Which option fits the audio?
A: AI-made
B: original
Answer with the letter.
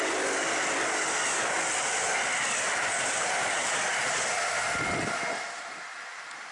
B